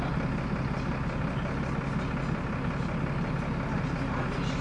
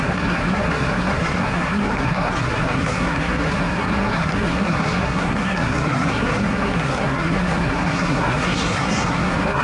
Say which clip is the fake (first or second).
second